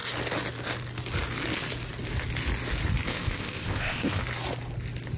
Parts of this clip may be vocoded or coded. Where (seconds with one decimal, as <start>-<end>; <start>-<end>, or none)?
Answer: 3.1-4.2